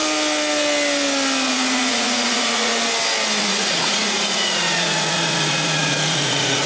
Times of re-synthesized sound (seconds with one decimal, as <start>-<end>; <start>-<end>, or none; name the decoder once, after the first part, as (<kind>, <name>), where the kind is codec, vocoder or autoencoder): 1.5-2.7 (vocoder, Vocos); 3.4-6.7